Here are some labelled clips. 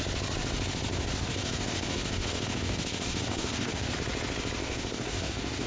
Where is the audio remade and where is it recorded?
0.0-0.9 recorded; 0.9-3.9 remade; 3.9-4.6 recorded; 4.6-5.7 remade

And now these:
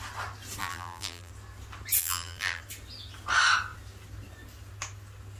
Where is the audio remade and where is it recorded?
0.0-0.6 recorded; 0.6-1.3 remade; 1.3-2.0 recorded; 2.0-2.6 remade; 2.6-5.4 recorded